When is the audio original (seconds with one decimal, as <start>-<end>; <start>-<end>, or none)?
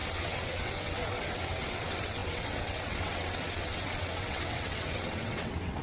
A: none